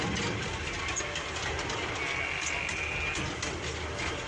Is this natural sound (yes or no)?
yes